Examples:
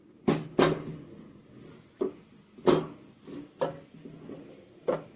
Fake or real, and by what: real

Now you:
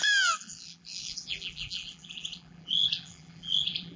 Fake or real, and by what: fake, vocoder, BigVGAN v2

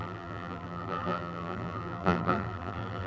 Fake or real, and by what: fake, vocoder, BigVGAN v2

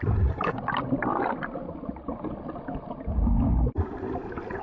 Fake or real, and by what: real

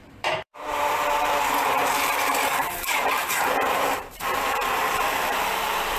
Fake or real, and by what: fake, vocoder, BigVGAN v2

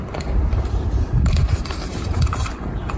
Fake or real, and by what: fake, vocoder, BigVGAN v2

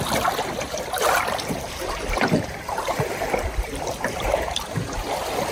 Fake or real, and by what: fake, vocoder, BigVGAN v2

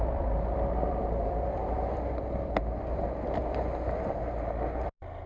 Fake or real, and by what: fake, vocoder, BigVGAN v2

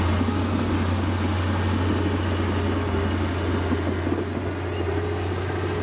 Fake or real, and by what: real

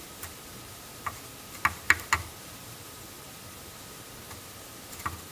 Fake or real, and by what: fake, vocoder, BigVGAN v2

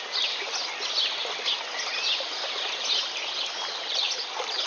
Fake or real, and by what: real